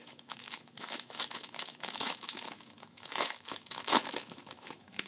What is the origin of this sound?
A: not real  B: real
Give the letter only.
A